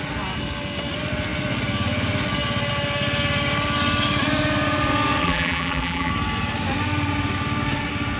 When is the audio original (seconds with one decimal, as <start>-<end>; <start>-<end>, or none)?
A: 0.0-5.2; 6.1-8.2